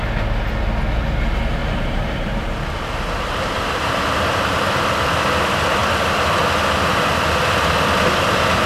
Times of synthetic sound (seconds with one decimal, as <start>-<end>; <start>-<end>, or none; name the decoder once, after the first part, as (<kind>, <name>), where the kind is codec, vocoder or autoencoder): 1.6-4.7 (vocoder, BigVGAN v2)